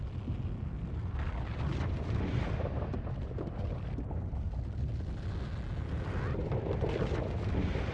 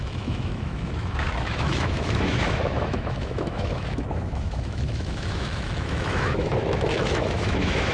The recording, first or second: first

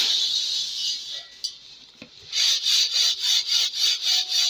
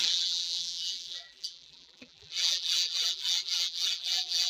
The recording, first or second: first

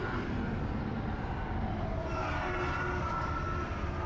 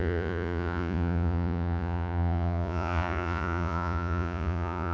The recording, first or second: first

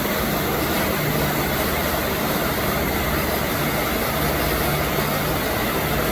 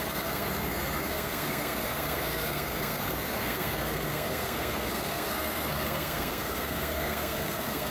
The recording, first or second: first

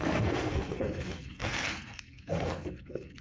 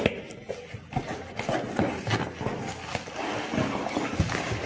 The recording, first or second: second